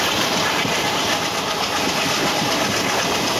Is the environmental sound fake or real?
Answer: real